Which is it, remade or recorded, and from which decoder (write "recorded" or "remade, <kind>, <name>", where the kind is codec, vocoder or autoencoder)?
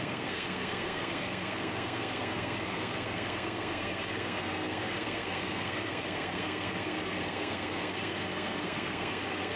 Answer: remade, codec, SNAC